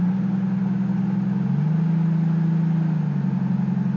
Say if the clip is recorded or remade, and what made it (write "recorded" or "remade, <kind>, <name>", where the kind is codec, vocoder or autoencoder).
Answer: recorded